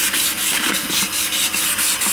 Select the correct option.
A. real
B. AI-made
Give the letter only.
A